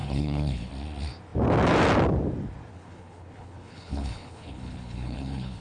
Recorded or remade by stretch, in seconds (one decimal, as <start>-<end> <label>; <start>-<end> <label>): 0.0-0.7 remade; 0.7-2.7 recorded; 2.7-5.6 remade